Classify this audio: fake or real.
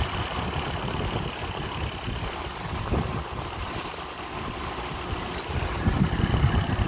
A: fake